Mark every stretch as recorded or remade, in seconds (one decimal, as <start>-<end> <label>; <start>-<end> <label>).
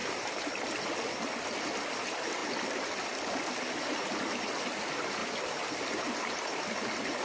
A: 0.0-0.8 remade; 0.8-5.2 recorded; 5.2-6.6 remade; 6.6-7.2 recorded